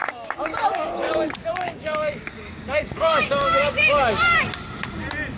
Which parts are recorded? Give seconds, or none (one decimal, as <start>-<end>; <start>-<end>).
1.1-1.5; 4.4-5.4